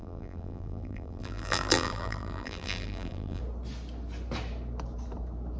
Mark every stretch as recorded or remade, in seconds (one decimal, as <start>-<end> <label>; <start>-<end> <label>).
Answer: 0.0-3.4 remade; 3.4-5.6 recorded